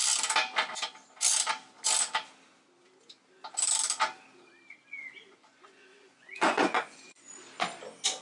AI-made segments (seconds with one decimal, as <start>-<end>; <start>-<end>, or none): 4.8-7.3